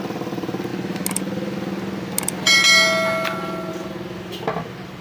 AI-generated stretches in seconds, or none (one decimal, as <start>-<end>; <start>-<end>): none